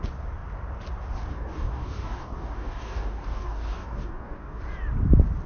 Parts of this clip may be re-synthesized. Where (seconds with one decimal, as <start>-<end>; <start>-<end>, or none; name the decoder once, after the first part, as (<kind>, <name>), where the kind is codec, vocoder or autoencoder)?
1.3-4.6 (codec, DAC)